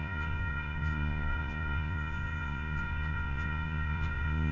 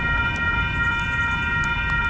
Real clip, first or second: second